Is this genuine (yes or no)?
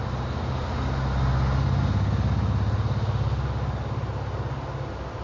yes